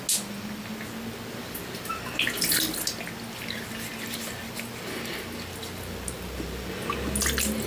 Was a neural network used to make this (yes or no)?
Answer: no